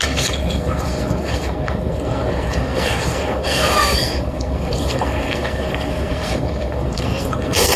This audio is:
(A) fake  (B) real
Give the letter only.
A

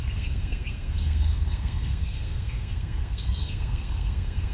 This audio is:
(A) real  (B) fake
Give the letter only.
B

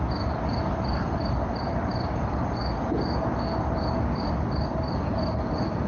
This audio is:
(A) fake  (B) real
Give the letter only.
B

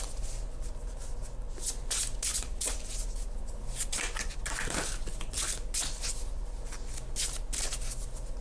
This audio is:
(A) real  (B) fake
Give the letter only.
A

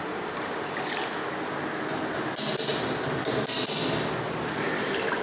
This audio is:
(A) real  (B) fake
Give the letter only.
A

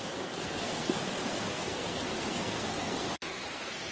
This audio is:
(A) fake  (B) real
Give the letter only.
A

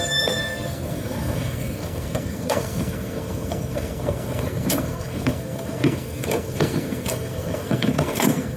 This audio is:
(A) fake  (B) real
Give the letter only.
A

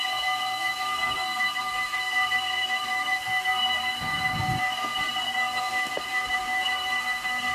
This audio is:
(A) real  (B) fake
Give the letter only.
B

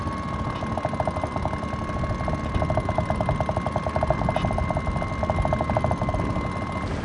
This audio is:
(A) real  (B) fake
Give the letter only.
A